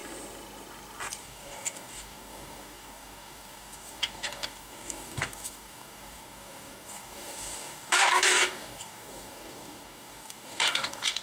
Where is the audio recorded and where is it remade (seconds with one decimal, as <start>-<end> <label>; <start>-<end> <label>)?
0.0-1.2 recorded; 1.2-11.2 remade